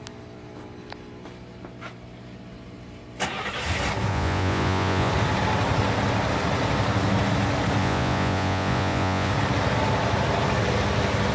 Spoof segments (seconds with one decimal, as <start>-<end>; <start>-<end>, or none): 4.1-5.1; 7.8-9.3